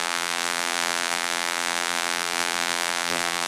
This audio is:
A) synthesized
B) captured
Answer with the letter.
A